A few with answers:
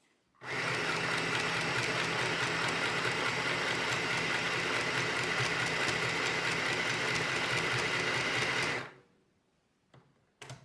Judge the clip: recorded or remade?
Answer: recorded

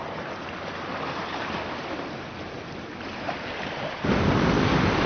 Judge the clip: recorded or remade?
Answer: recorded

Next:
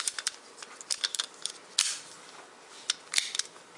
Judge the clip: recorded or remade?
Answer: remade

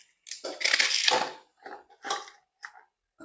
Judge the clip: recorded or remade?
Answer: recorded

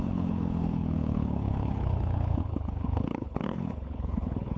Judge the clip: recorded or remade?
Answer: remade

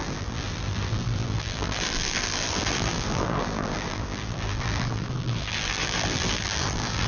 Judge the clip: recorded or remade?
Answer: remade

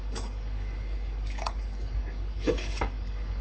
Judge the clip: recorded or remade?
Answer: remade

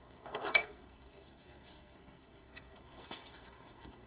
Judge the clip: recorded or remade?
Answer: remade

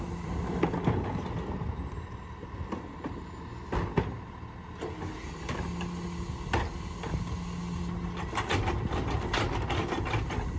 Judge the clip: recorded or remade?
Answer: recorded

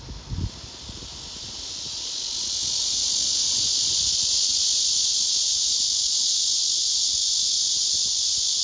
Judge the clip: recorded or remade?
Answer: recorded